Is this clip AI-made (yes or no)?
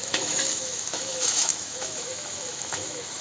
yes